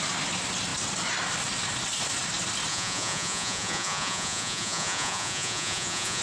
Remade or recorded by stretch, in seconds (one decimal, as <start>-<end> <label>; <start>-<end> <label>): 0.0-2.7 recorded; 2.7-6.2 remade